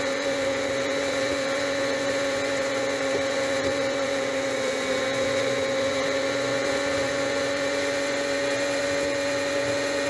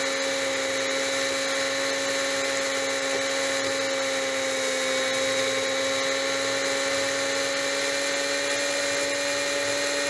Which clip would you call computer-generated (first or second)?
first